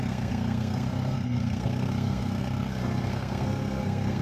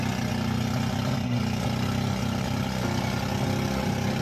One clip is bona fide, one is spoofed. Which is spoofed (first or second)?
first